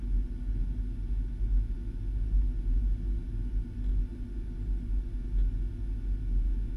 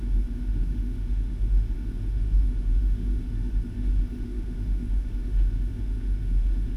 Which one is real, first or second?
first